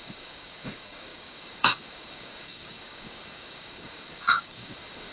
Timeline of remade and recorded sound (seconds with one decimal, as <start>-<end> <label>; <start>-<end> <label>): 0.0-5.1 remade